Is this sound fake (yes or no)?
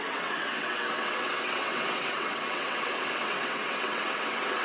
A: yes